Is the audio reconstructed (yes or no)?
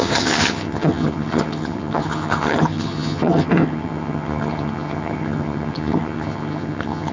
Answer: yes